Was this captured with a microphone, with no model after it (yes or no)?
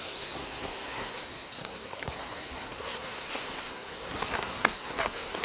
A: no